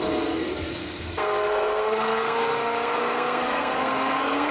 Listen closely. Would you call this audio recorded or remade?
remade